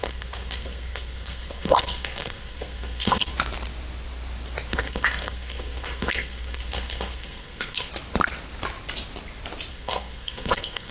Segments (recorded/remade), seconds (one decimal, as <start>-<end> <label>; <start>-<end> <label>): 0.0-3.3 remade; 3.3-4.7 recorded; 4.7-7.9 remade; 7.9-9.7 recorded; 9.7-10.9 remade

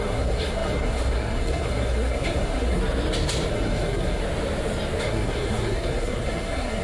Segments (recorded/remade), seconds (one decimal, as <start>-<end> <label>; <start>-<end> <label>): 0.0-2.8 remade; 2.8-3.5 recorded; 3.5-4.2 remade; 4.2-5.0 recorded; 5.0-6.8 remade

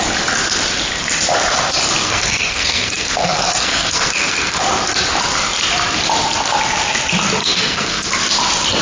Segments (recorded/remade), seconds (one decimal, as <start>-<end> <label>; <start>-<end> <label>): 0.0-2.0 recorded; 2.0-4.6 remade; 4.6-7.4 recorded; 7.4-8.1 remade; 8.1-8.8 recorded

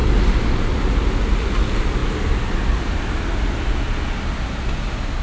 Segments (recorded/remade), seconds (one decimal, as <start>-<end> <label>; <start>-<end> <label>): 0.0-5.2 recorded

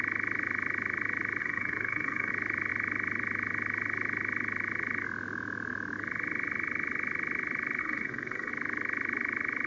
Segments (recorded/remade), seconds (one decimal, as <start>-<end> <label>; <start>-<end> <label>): 0.0-1.4 recorded; 1.4-2.3 remade; 2.3-7.8 recorded; 7.8-8.5 remade; 8.5-9.7 recorded